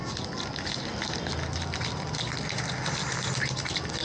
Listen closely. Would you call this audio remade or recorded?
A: recorded